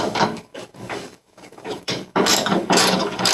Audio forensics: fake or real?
fake